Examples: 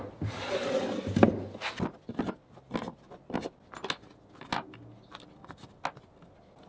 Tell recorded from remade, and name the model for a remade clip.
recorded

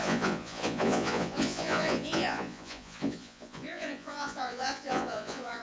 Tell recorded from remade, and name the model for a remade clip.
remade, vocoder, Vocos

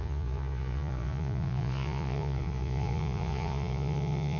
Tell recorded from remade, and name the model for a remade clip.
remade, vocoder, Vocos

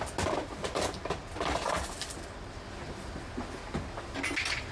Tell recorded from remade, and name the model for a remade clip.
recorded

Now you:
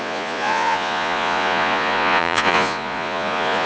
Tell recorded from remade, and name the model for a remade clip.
remade, vocoder, Vocos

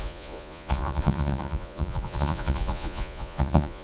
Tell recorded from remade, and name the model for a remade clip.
remade, vocoder, Vocos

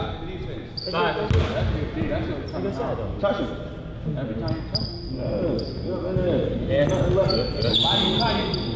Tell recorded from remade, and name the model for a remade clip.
recorded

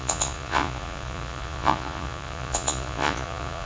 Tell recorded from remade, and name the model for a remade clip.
remade, vocoder, Vocos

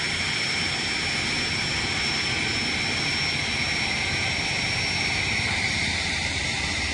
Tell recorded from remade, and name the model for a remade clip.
recorded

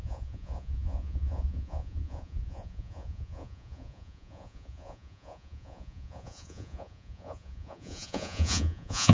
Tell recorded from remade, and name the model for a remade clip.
remade, vocoder, Vocos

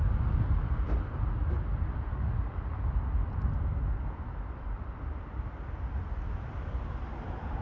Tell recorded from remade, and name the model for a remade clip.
recorded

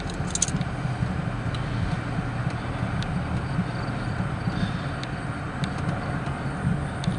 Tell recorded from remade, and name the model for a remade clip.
recorded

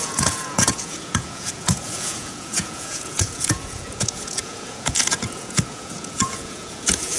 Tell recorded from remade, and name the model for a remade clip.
remade, vocoder, Vocos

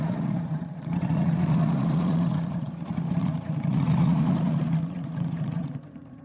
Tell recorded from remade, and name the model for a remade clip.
remade, vocoder, Vocos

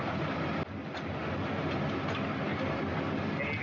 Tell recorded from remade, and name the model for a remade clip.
recorded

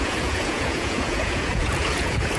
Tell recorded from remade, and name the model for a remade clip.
remade, vocoder, Vocos